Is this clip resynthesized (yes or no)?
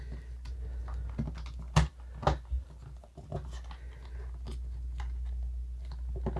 no